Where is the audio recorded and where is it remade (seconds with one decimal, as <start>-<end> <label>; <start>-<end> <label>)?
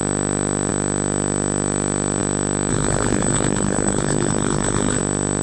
0.0-2.7 recorded; 2.7-5.0 remade; 5.0-5.4 recorded